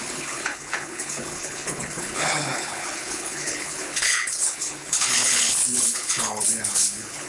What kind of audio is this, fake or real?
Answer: fake